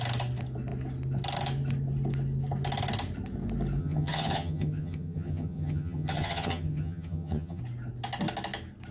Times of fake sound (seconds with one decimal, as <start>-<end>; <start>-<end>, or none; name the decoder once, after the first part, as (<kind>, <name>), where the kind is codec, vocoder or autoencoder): 3.8-7.6 (vocoder, HiFi-GAN)